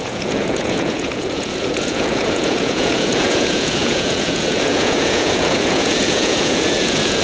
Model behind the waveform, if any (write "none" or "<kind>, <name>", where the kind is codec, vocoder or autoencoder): vocoder, Vocos